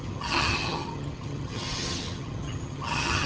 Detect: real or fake fake